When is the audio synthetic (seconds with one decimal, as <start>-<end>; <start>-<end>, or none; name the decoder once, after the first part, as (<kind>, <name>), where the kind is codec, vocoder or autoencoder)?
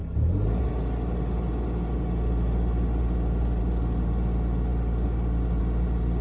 none